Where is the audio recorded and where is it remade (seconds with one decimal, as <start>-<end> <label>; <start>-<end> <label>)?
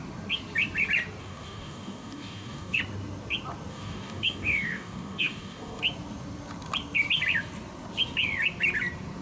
0.0-1.2 recorded; 1.2-2.8 remade; 2.8-3.7 recorded; 3.7-5.8 remade; 5.8-9.2 recorded